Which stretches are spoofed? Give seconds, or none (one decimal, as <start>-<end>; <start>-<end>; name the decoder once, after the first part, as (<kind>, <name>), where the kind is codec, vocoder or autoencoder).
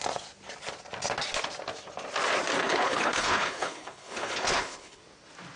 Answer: 2.6-5.0 (codec, HILCodec)